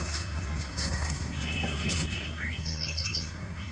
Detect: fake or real fake